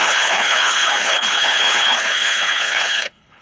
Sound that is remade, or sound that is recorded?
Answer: remade